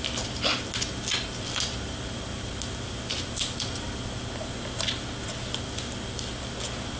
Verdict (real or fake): real